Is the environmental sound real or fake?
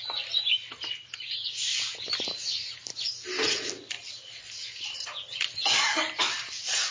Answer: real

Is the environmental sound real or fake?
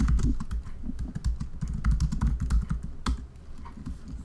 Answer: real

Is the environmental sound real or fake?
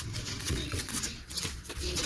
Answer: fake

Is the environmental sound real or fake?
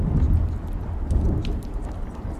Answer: real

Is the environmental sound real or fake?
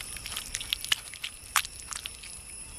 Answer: real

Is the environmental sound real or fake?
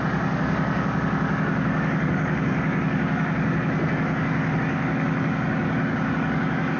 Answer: fake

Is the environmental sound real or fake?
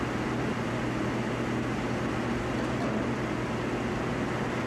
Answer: real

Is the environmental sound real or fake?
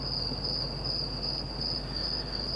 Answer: real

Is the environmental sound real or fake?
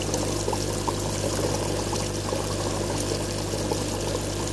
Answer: fake